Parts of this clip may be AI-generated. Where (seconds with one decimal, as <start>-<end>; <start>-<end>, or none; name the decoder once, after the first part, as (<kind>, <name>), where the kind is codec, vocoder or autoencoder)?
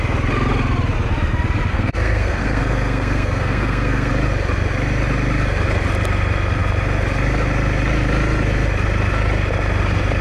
1.7-4.1 (codec, SNAC)